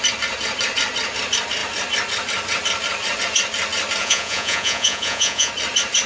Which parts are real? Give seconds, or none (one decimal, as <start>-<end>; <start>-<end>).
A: 0.0-4.0; 5.5-6.1